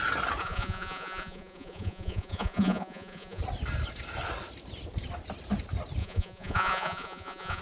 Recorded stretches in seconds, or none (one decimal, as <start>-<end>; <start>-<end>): 0.0-0.4; 3.4-6.0